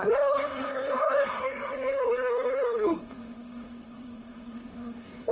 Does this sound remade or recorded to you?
remade